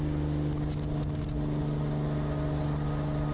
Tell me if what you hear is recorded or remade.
recorded